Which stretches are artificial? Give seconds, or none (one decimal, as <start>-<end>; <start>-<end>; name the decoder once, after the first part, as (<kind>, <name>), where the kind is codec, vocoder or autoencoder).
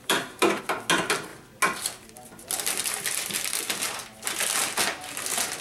0.0-0.6 (vocoder, BigVGAN v2)